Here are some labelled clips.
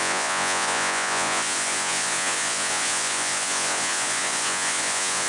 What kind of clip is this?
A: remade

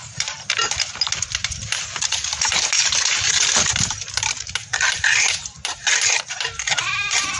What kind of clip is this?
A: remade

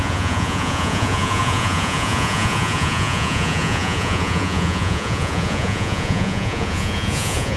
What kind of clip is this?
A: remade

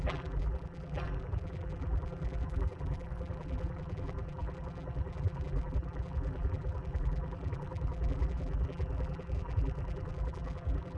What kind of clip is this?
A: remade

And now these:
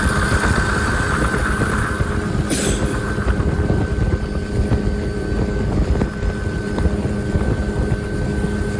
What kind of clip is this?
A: recorded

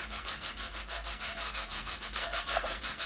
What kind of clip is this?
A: remade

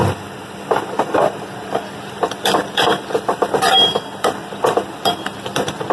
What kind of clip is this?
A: remade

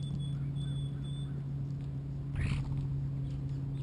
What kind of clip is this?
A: recorded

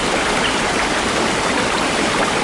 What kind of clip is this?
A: remade